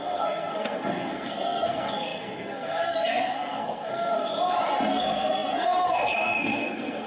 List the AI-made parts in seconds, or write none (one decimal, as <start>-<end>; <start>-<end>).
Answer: 0.0-4.3; 4.9-7.1